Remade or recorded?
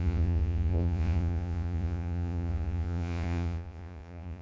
remade